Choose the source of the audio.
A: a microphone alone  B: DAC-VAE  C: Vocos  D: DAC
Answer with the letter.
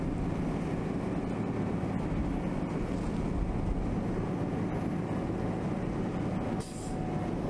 A